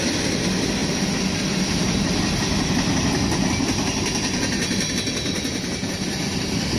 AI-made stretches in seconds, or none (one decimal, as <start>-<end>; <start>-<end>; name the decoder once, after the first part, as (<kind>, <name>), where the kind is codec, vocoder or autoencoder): none